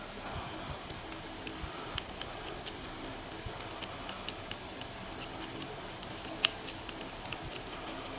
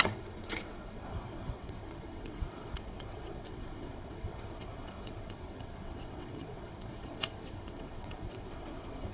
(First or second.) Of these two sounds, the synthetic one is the second